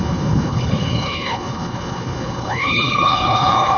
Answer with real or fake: fake